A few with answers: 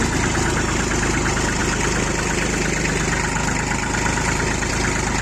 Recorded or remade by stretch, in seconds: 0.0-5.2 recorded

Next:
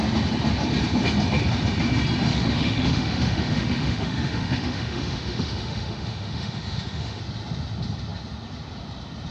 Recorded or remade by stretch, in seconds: 0.0-2.3 recorded; 2.3-7.2 remade; 7.2-9.3 recorded

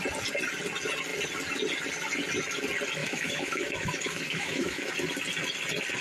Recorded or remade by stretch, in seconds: 0.0-3.0 recorded; 3.0-4.9 remade; 4.9-6.0 recorded

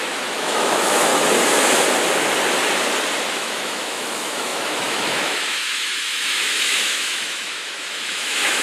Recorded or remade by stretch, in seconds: 0.0-1.1 remade; 1.1-3.3 recorded; 3.3-8.6 remade

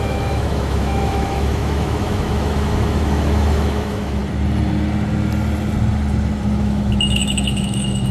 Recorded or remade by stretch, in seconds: 0.0-4.2 remade; 4.2-6.6 recorded; 6.6-8.1 remade

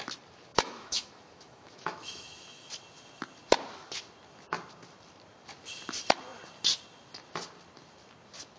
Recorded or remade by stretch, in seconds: 0.0-0.5 recorded; 0.5-2.7 remade; 2.7-8.6 recorded